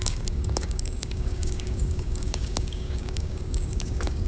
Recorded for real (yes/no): no